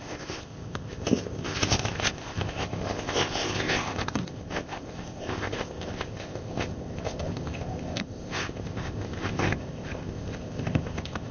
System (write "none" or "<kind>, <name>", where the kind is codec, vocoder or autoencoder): codec, ZipCodec